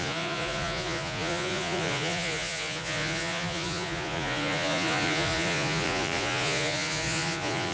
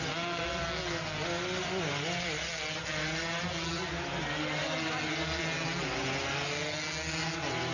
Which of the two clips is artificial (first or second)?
first